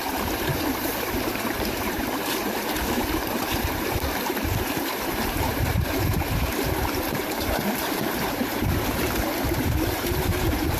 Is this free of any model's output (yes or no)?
no